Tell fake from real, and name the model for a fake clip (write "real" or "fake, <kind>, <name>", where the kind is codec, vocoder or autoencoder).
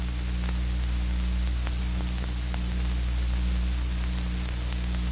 real